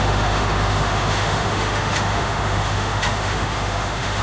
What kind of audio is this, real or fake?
fake